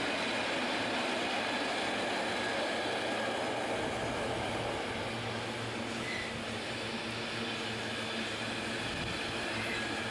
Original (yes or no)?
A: yes